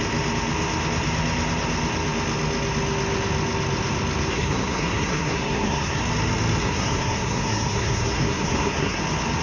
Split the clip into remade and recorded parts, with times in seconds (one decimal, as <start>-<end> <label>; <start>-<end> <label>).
0.0-4.3 recorded; 4.3-6.0 remade; 6.0-6.6 recorded; 6.6-9.0 remade; 9.0-9.4 recorded